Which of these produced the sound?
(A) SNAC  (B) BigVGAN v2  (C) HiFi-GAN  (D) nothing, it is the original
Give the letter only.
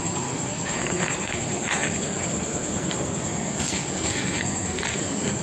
A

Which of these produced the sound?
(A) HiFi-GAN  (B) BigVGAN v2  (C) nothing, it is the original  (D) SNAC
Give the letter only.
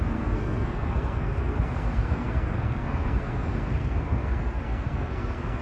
D